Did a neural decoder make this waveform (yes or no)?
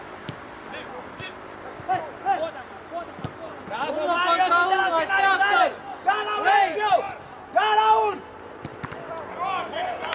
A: no